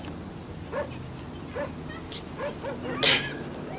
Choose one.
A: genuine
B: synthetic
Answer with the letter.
A